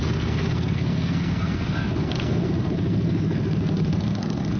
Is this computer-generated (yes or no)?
yes